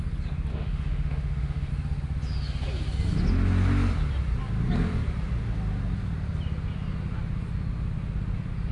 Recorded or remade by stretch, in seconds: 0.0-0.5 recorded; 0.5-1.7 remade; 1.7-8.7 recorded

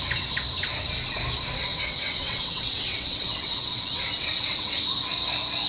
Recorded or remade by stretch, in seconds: 0.0-1.7 recorded; 1.7-5.1 remade; 5.1-5.7 recorded